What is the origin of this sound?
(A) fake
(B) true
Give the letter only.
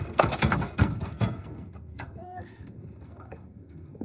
A